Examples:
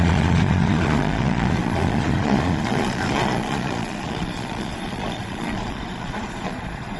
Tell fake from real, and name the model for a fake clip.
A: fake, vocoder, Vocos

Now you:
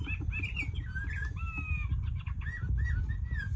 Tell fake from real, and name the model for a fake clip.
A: real